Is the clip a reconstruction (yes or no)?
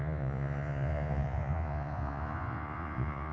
yes